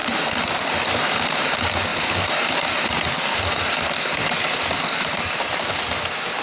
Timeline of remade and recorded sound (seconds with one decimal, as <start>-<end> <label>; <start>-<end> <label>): 0.0-6.4 recorded